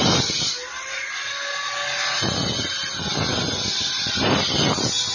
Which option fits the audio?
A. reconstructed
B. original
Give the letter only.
B